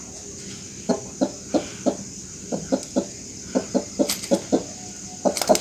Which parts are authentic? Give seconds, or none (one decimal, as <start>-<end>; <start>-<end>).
0.0-1.7; 4.3-5.6

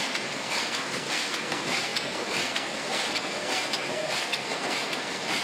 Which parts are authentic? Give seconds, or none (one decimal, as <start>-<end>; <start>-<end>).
none

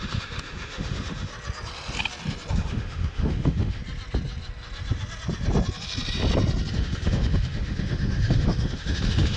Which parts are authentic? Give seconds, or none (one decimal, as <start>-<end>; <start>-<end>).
1.3-2.5; 3.8-6.7

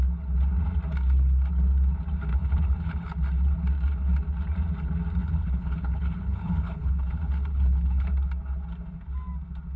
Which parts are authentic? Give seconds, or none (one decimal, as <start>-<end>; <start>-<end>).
0.0-2.3; 3.1-5.2; 8.1-9.8

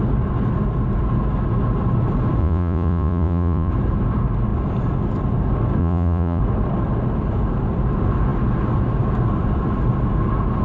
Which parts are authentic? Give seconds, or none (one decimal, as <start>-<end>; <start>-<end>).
0.0-2.4; 3.7-5.8; 6.4-10.6

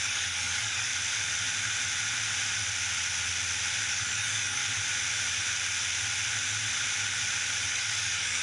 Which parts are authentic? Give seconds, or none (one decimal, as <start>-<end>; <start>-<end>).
0.9-3.9; 4.6-7.7

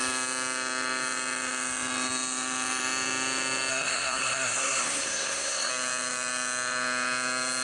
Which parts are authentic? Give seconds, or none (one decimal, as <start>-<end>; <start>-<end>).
0.0-3.7; 5.7-7.6